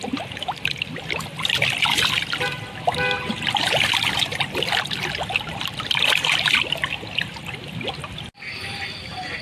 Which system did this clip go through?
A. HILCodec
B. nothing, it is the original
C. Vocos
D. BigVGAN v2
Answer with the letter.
B